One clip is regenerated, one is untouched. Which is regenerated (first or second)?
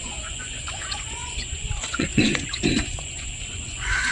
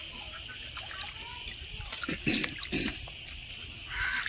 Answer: first